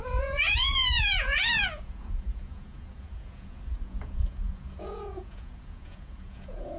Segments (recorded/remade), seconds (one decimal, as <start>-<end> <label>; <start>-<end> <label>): 0.0-6.8 remade